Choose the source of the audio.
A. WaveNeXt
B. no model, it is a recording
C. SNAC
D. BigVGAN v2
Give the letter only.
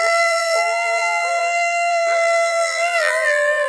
D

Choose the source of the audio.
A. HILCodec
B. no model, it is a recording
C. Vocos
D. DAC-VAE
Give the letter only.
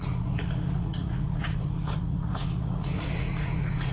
C